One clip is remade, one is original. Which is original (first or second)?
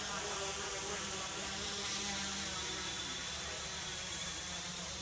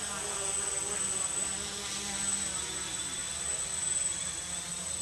second